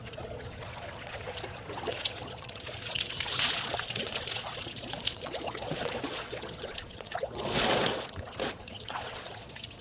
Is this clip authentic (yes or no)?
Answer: no